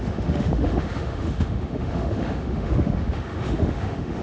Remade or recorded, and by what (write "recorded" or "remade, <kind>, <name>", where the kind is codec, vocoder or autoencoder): remade, autoencoder, DAC-VAE